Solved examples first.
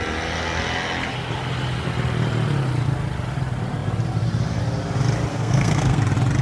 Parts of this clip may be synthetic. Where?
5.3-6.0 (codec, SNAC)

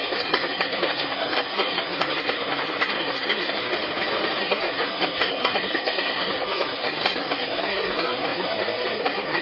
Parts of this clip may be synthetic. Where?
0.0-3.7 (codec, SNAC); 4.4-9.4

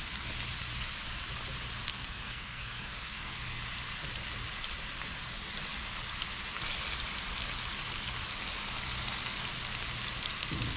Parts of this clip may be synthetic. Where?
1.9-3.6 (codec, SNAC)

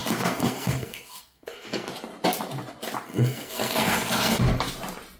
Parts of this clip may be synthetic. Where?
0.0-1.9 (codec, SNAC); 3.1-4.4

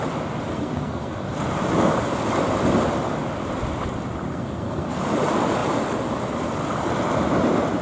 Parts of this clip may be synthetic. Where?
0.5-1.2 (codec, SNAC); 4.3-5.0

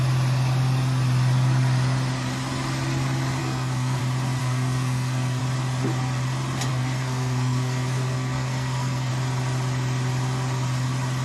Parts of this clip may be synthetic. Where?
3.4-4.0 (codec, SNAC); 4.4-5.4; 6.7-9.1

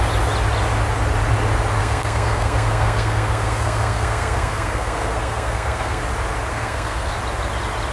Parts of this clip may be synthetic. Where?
1.8-6.0 (codec, SNAC); 6.5-7.1